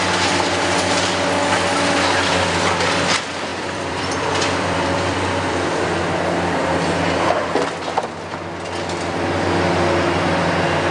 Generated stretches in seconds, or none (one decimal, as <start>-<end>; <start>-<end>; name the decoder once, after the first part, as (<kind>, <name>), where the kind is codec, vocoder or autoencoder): 3.5-6.0 (vocoder, BigVGAN v2)